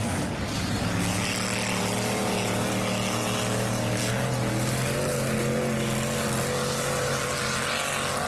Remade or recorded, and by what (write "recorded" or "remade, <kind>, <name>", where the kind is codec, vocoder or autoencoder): recorded